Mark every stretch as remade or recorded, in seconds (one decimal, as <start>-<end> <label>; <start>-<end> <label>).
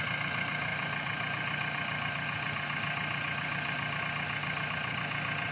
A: 0.0-5.5 recorded